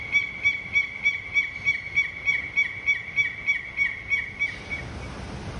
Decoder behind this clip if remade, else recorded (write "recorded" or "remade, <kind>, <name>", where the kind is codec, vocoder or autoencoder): recorded